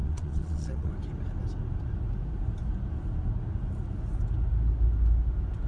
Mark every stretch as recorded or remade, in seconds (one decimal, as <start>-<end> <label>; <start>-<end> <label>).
0.0-0.9 remade; 0.9-5.7 recorded